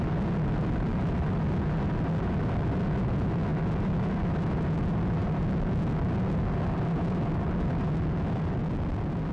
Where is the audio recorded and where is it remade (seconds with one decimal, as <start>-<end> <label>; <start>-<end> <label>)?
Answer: 0.0-9.3 recorded